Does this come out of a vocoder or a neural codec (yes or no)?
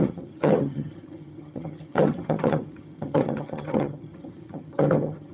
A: yes